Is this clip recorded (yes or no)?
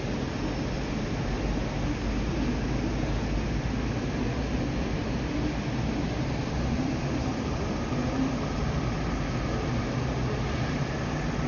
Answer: yes